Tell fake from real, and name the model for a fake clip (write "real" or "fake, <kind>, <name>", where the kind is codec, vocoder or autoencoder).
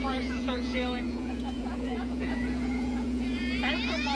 fake, vocoder, Vocos